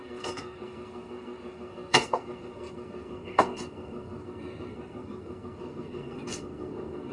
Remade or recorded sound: remade